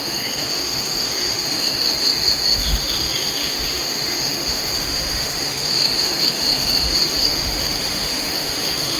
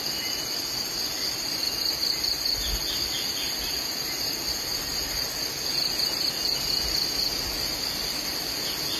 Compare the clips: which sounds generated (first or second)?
first